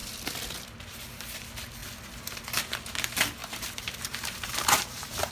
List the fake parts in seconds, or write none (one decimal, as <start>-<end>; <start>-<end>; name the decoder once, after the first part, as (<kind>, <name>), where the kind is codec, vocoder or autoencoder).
3.4-5.3 (vocoder, BigVGAN v2)